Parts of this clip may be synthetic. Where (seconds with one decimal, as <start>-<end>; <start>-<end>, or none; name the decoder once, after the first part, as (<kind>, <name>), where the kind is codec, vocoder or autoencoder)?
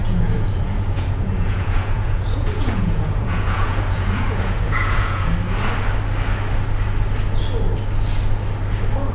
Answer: 0.0-5.3 (vocoder, Vocos)